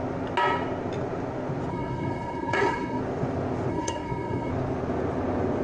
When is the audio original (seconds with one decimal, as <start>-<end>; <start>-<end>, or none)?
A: 0.0-1.7; 3.0-3.7; 4.5-5.6